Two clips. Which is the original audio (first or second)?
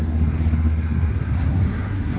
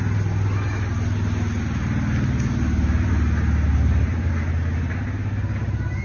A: second